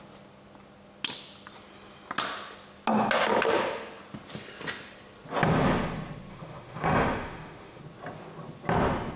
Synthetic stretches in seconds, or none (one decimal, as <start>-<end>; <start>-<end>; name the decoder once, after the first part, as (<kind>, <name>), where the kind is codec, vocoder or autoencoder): 6.3-7.8 (autoencoder, DAC-VAE)